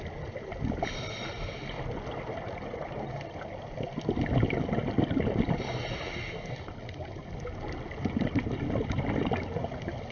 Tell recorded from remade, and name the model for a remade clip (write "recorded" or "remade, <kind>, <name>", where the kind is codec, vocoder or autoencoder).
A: recorded